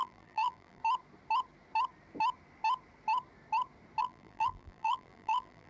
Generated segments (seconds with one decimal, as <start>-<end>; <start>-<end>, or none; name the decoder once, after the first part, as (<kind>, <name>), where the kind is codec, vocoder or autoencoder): 0.0-0.8 (vocoder, BigVGAN v2); 4.0-5.7